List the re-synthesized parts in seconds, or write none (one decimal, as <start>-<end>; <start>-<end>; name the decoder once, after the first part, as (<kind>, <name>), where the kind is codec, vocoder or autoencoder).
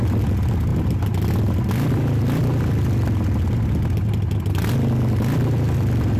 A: none